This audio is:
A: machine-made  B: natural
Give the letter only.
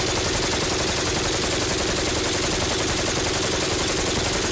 B